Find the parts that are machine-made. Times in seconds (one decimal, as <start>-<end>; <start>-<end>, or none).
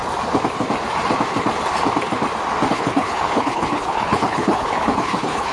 2.7-5.5